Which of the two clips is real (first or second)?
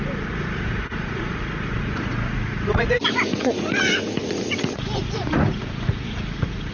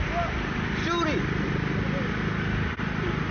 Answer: second